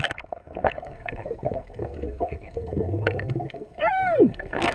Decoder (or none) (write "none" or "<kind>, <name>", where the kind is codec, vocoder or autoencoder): codec, SNAC